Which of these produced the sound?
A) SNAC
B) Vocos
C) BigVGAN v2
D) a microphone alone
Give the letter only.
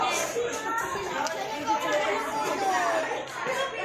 D